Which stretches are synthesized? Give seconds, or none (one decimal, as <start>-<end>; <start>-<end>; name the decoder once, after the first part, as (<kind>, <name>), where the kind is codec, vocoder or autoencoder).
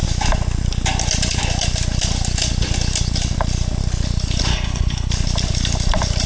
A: 4.5-5.1 (codec, HILCodec)